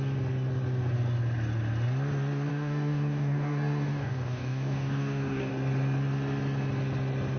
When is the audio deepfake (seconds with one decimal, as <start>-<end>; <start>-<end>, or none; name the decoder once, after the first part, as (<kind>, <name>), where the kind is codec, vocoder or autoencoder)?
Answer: 2.5-5.5 (codec, DAC)